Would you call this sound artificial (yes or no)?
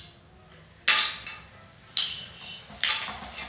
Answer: no